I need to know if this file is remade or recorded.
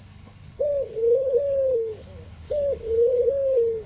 remade